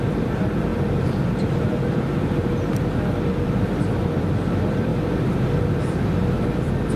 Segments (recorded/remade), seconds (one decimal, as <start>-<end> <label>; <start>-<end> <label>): 0.0-7.0 remade

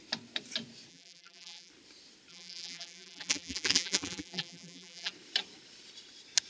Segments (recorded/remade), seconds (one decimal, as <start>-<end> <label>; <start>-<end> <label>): 0.0-0.9 recorded; 0.9-1.7 remade; 1.7-2.3 recorded; 2.3-5.1 remade; 5.1-6.5 recorded